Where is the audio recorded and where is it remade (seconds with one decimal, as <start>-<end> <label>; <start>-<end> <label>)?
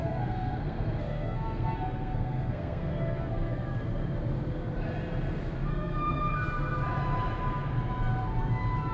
0.0-3.8 remade; 3.8-5.7 recorded; 5.7-6.2 remade; 6.2-8.9 recorded